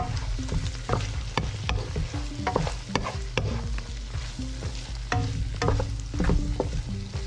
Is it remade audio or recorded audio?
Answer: recorded